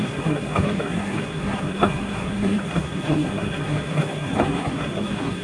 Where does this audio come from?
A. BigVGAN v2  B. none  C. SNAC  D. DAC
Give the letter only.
C